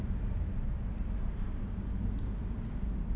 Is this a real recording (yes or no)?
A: yes